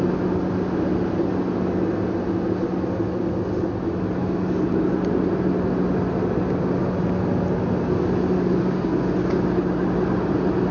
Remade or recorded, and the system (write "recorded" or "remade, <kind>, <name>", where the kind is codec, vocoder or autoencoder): recorded